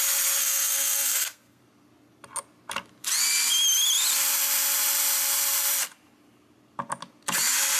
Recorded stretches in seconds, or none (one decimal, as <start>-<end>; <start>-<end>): 0.0-0.4; 1.6-7.8